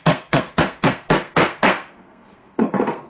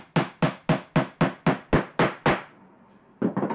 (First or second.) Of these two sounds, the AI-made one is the first